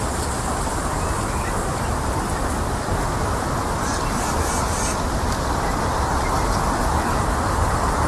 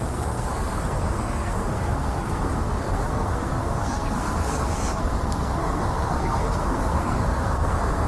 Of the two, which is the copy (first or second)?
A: second